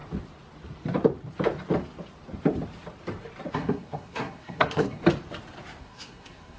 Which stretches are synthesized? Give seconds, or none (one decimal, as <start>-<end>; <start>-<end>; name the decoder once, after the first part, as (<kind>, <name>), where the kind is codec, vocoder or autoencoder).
3.5-5.0 (codec, SNAC); 5.8-6.6